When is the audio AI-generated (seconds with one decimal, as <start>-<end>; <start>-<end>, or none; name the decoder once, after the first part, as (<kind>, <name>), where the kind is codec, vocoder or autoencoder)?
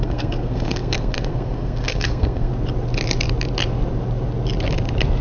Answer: 0.0-2.5 (codec, SNAC)